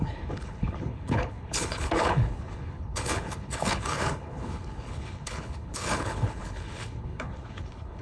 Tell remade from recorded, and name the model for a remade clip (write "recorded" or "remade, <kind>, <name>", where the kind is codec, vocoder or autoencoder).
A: remade, codec, HILCodec